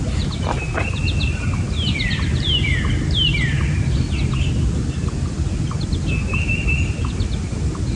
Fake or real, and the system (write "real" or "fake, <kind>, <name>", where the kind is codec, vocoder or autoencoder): real